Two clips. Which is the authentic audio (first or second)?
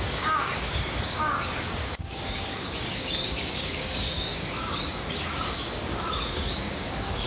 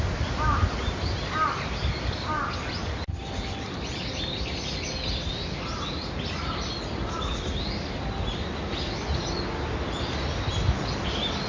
second